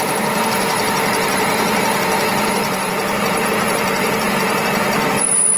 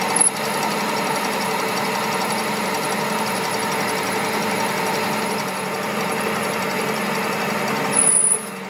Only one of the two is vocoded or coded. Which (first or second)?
first